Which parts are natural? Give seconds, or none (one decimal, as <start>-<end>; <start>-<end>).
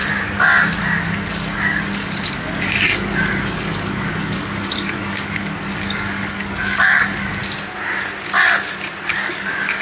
0.0-0.8; 7.4-9.1